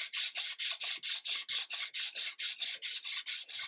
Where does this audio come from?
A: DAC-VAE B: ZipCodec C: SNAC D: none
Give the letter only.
D